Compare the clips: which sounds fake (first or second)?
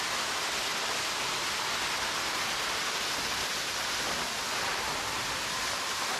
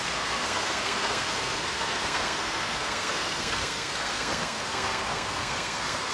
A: second